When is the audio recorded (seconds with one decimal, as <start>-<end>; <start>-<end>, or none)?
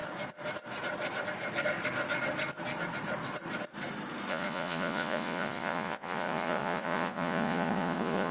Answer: 0.0-4.3